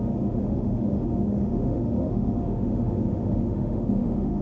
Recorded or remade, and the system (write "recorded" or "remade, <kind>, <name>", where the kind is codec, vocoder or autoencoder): remade, autoencoder, DAC-VAE